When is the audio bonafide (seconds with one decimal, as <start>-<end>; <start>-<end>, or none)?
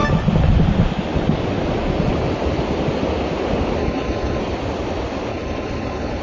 0.0-3.8; 4.4-5.3